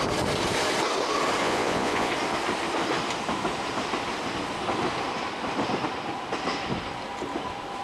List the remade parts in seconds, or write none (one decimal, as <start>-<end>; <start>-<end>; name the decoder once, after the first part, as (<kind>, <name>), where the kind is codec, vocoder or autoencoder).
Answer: 1.4-2.1 (vocoder, Vocos)